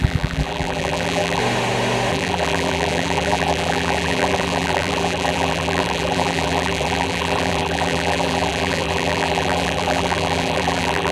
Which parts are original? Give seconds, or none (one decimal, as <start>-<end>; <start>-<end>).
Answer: 1.4-2.1